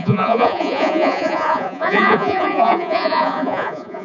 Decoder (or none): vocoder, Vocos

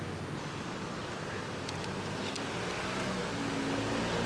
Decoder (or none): none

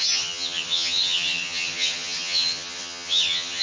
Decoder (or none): vocoder, HiFi-GAN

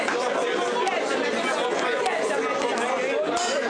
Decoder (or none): none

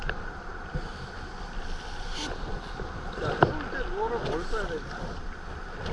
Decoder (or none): none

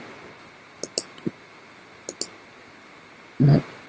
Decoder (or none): none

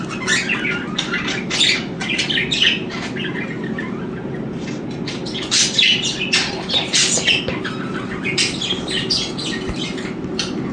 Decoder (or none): none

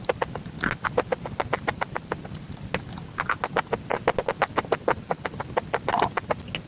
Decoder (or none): none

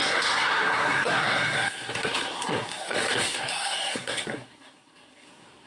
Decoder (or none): codec, SNAC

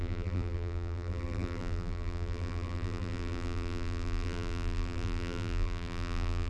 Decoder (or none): vocoder, BigVGAN v2